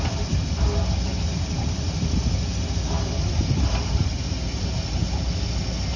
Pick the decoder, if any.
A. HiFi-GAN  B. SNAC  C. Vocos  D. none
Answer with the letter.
D